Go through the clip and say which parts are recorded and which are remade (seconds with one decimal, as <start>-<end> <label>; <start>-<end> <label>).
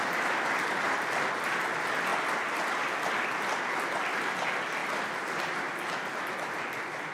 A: 0.0-7.1 recorded